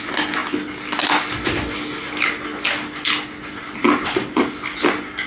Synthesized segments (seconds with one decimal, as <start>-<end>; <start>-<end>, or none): none